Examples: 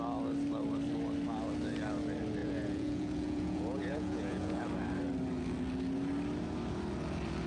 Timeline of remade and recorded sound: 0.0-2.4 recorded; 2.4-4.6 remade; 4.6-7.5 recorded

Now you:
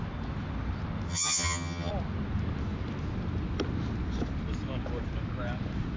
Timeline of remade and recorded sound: 0.0-1.1 recorded; 1.1-1.9 remade; 1.9-6.0 recorded

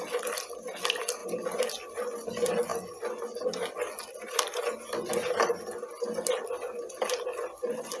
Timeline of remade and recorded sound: 0.0-8.0 recorded

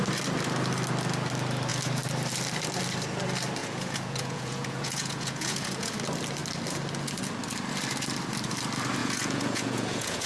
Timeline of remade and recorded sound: 0.0-3.6 recorded; 3.6-5.9 remade; 5.9-9.0 recorded; 9.0-10.3 remade

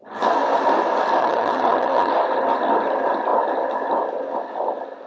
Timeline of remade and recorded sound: 0.0-1.2 recorded; 1.2-2.1 remade; 2.1-5.1 recorded

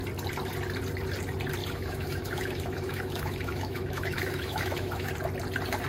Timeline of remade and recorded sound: 0.0-1.6 recorded; 1.6-5.1 remade; 5.1-5.9 recorded